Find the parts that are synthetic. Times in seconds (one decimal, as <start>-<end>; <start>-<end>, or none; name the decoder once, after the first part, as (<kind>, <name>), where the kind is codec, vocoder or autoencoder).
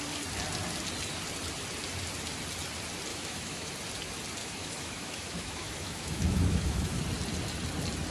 3.1-3.7 (autoencoder, DAC-VAE); 4.4-7.0